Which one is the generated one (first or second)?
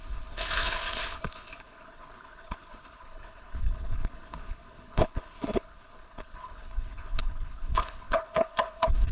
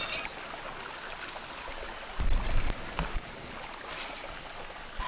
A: first